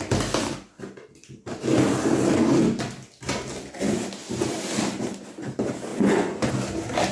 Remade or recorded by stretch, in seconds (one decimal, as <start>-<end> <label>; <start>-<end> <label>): 0.0-5.9 recorded; 5.9-6.5 remade; 6.5-7.1 recorded